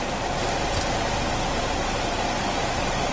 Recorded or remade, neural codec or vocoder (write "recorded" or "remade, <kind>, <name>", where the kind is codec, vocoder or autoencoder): recorded